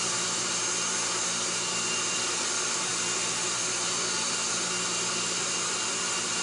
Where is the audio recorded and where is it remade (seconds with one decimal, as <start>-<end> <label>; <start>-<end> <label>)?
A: 0.0-6.4 recorded